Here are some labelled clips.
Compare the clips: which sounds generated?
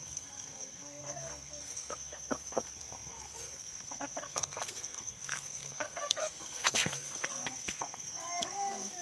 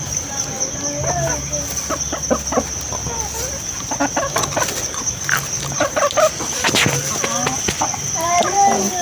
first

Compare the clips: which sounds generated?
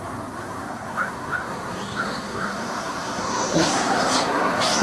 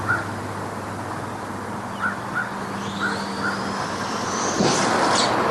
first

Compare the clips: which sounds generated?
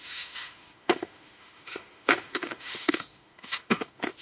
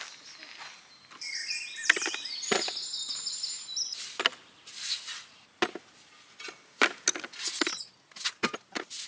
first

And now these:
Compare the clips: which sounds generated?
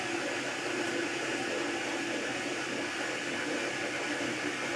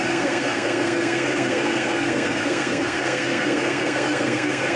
second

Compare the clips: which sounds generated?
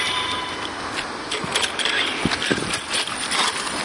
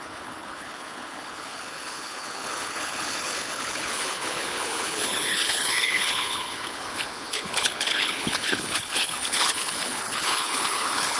second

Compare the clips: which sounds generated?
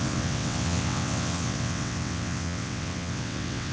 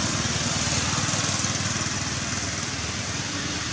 first